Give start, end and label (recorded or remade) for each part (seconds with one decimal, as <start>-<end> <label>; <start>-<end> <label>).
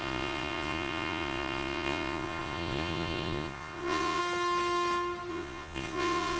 0.0-4.2 remade; 4.2-5.3 recorded; 5.3-6.4 remade